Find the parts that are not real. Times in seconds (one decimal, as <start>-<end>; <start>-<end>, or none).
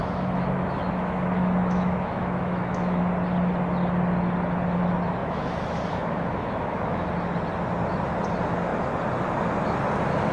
0.0-3.0; 5.2-7.1